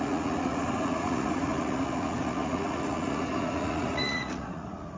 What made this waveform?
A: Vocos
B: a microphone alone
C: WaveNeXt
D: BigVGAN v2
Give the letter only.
A